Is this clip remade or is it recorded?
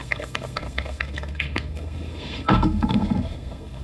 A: remade